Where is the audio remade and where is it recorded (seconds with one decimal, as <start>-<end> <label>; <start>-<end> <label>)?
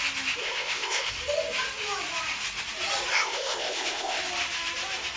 0.0-0.4 recorded; 0.4-1.1 remade; 1.1-3.1 recorded; 3.1-4.2 remade; 4.2-5.2 recorded